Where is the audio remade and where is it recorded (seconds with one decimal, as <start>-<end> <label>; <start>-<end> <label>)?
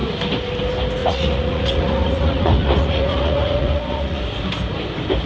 0.0-1.0 recorded; 1.0-4.2 remade; 4.2-5.3 recorded